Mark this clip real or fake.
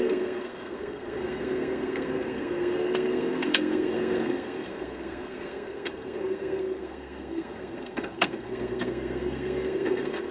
fake